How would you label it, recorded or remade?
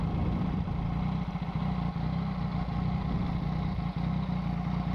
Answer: recorded